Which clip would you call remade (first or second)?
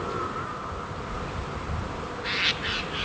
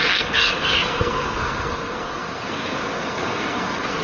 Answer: second